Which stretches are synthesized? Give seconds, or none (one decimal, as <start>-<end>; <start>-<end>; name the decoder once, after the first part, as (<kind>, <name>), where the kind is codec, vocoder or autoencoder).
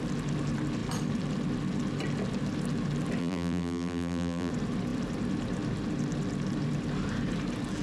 3.2-4.5 (vocoder, BigVGAN v2)